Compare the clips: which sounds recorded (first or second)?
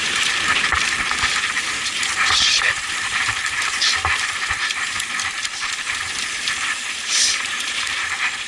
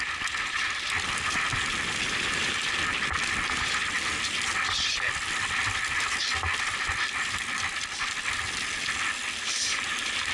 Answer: second